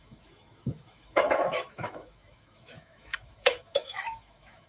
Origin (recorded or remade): remade